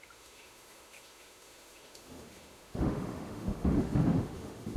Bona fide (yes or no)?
no